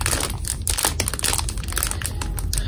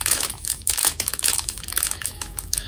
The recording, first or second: first